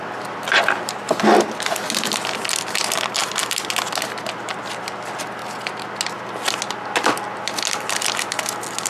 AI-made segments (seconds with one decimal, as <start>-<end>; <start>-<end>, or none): 0.0-1.0; 3.2-3.7